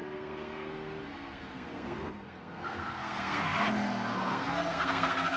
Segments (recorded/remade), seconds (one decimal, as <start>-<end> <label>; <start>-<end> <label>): 0.0-5.4 remade